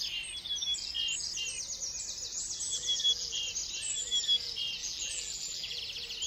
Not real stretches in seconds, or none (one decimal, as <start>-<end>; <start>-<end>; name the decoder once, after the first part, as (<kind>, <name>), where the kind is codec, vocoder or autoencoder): 2.3-3.4 (vocoder, BigVGAN v2); 4.8-5.8